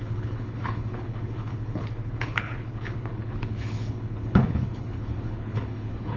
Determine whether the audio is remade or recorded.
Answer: remade